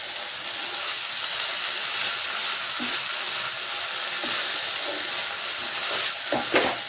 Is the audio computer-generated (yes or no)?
no